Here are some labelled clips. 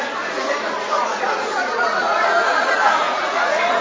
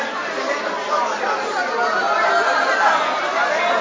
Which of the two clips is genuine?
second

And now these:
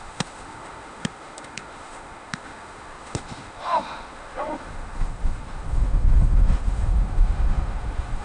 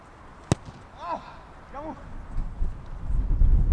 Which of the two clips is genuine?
second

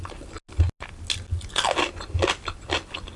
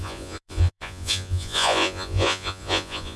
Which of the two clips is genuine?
first